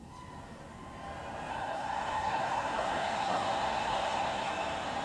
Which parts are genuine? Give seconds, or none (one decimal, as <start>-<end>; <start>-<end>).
0.0-1.5; 4.5-5.0